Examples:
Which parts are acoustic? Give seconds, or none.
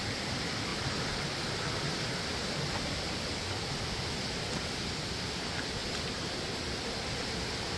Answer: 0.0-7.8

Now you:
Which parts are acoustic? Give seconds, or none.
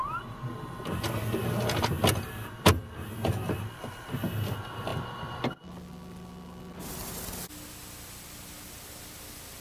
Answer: 0.0-9.6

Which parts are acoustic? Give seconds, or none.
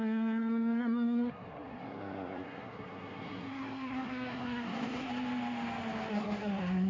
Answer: 5.1-6.1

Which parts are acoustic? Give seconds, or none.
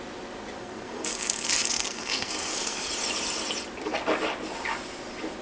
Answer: 0.0-0.6; 2.9-5.4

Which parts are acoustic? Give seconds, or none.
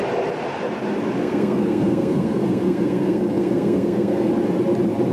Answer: 0.0-1.2; 4.3-5.1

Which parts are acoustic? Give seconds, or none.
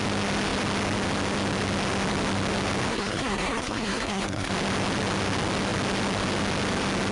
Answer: 0.0-2.9; 4.5-7.1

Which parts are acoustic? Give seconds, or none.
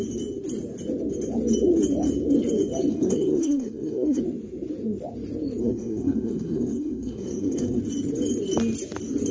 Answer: 0.0-2.9; 4.2-5.6; 7.8-9.3